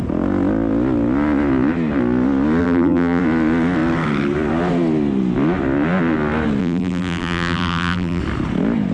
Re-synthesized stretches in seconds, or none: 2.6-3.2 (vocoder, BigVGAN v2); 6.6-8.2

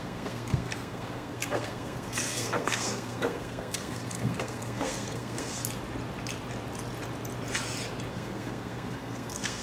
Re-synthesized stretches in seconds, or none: 0.0-5.6 (codec, SNAC); 8.1-9.6

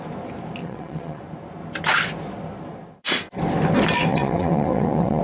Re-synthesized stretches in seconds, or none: 0.6-1.2 (vocoder, WaveNeXt); 4.1-5.2

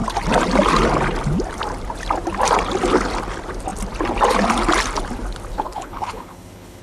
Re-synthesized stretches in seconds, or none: 5.5-6.8 (codec, HILCodec)

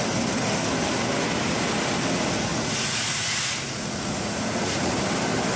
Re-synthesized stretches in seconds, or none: 2.5-4.9 (vocoder, Vocos)

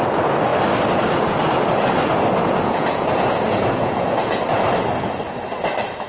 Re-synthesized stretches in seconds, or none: 2.4-4.4 (vocoder, Vocos)